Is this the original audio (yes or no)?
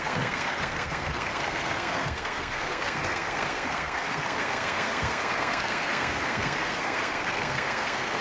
no